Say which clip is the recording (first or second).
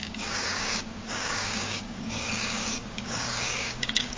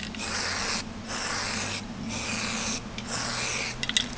second